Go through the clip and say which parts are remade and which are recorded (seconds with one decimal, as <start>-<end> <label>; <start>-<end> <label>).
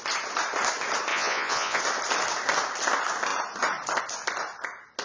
0.0-1.1 recorded; 1.1-1.8 remade; 1.8-5.0 recorded